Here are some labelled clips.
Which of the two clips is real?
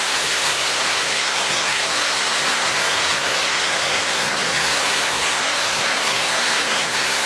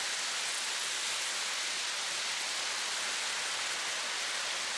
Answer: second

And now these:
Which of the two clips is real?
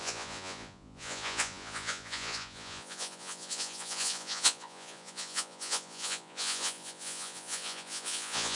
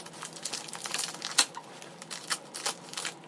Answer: second